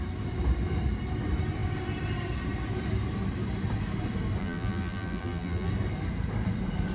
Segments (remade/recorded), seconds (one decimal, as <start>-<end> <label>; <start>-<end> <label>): 0.0-4.4 recorded; 4.4-5.7 remade; 5.7-6.9 recorded